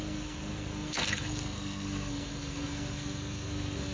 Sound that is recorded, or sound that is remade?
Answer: remade